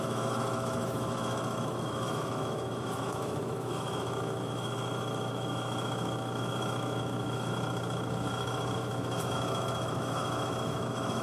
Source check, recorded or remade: remade